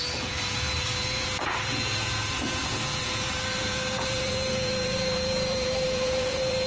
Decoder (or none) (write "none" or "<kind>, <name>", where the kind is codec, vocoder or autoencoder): vocoder, Vocos